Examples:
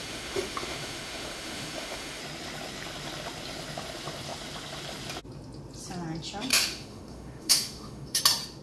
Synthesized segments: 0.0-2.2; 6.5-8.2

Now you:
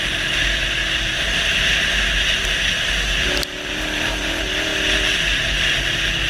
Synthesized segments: none

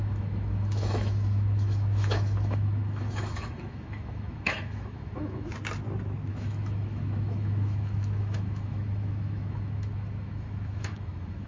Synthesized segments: 0.0-5.5; 6.3-11.5

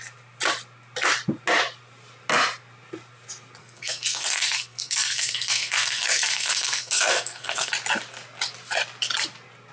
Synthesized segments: 3.6-7.7

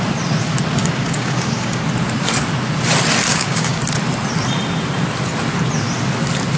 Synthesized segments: 0.8-1.8; 3.3-3.8

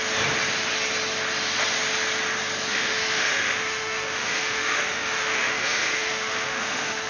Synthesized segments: 2.7-7.1

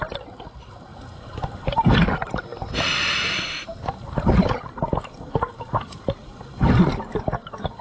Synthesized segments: 0.9-1.9